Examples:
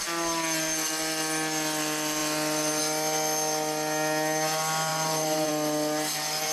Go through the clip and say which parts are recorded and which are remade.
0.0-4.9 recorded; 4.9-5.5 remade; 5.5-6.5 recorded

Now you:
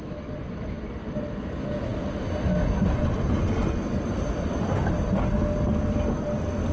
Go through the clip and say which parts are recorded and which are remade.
0.0-0.4 recorded; 0.4-1.4 remade; 1.4-3.6 recorded; 3.6-4.9 remade; 4.9-6.7 recorded

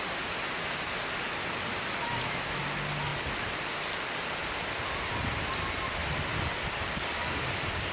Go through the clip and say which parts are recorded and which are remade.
0.0-3.1 recorded; 3.1-4.5 remade; 4.5-7.9 recorded

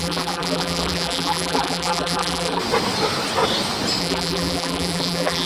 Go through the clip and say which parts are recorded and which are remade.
0.0-2.6 remade; 2.6-4.0 recorded; 4.0-5.5 remade

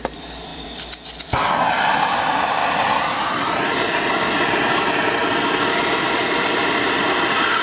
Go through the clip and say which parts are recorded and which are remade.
0.0-5.2 remade; 5.2-5.8 recorded; 5.8-7.6 remade

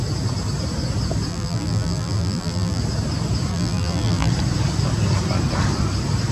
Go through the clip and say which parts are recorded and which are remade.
0.0-1.3 recorded; 1.3-2.8 remade; 2.8-3.5 recorded; 3.5-4.3 remade; 4.3-6.3 recorded

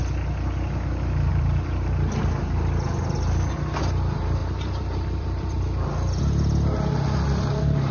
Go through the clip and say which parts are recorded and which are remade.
0.0-1.3 recorded; 1.3-2.2 remade; 2.2-4.4 recorded; 4.4-5.6 remade; 5.6-7.9 recorded

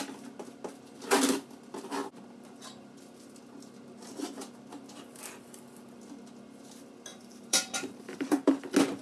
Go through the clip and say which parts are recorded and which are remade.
0.0-7.1 recorded; 7.1-8.6 remade; 8.6-9.0 recorded